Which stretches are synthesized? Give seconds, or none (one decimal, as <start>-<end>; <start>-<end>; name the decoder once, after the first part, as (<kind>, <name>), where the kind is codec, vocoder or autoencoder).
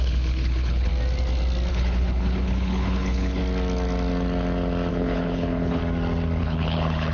0.0-0.9 (codec, HILCodec); 1.7-3.4; 4.9-5.8; 6.4-7.1